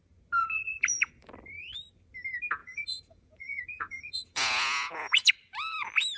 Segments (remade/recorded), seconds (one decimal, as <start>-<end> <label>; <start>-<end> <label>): 0.0-0.4 recorded; 0.4-1.1 remade; 1.1-2.6 recorded; 2.6-5.3 remade; 5.3-6.2 recorded